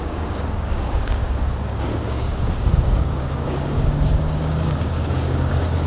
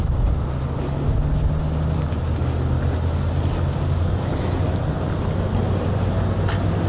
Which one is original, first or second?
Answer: second